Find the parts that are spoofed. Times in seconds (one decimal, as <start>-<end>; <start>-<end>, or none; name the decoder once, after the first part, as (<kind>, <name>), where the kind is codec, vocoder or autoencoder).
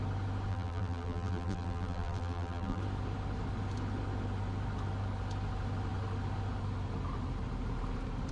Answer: 0.5-2.8 (vocoder, BigVGAN v2)